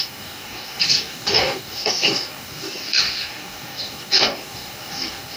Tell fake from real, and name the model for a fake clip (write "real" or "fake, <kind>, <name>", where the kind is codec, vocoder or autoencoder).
fake, codec, DAC